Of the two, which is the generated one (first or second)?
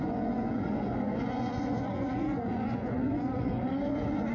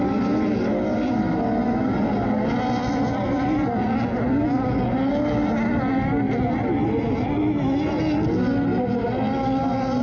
first